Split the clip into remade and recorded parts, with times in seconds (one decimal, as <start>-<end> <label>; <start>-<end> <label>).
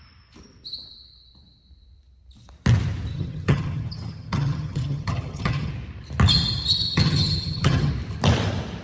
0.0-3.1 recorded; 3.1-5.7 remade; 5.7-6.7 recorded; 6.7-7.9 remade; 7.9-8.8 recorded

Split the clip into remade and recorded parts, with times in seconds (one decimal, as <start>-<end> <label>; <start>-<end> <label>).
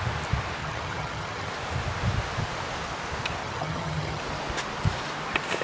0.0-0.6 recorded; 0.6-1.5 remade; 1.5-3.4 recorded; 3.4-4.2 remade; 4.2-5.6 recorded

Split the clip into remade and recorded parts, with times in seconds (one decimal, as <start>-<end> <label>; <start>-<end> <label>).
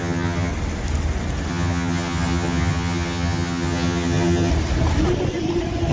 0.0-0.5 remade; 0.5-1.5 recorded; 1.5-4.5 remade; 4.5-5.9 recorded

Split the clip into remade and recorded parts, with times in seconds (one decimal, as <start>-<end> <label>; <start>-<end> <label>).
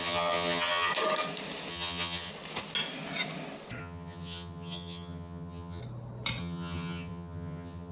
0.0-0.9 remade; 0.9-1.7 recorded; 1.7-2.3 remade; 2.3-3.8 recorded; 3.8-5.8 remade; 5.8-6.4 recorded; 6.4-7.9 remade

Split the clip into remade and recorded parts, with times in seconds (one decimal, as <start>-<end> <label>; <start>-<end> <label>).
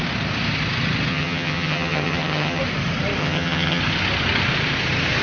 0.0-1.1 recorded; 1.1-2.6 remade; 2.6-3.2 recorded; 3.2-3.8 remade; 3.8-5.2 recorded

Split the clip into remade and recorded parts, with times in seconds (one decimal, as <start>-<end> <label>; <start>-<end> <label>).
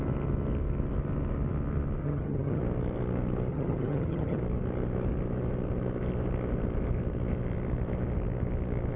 0.0-2.0 recorded; 2.0-2.6 remade; 2.6-3.5 recorded; 3.5-4.4 remade; 4.4-9.0 recorded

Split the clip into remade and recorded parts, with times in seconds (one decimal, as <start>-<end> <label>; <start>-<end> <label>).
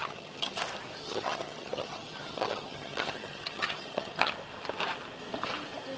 0.0-0.6 remade; 0.6-1.0 recorded; 1.0-4.3 remade; 4.3-6.0 recorded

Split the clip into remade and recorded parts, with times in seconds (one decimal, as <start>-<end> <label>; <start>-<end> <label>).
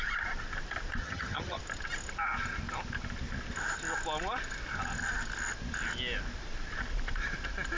0.0-1.0 recorded; 1.0-1.6 remade; 1.6-7.8 recorded